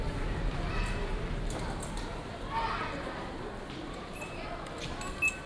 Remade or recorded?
recorded